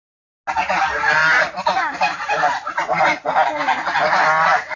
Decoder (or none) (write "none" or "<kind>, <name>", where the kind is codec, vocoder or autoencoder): none